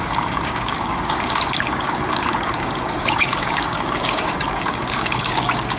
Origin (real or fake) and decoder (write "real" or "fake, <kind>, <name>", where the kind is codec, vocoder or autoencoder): fake, codec, DAC